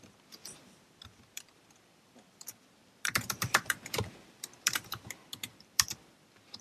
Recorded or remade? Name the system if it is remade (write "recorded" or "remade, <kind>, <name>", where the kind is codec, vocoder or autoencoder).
remade, vocoder, BigVGAN v2